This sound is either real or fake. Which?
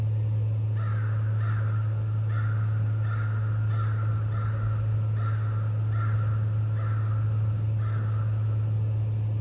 real